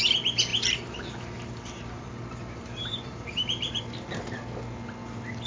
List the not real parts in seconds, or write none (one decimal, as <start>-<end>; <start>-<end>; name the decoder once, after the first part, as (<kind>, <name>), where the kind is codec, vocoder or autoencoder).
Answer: 0.5-3.8 (vocoder, BigVGAN v2)